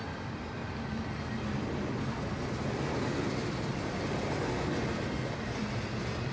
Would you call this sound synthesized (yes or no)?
no